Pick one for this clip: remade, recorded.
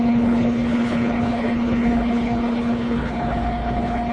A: remade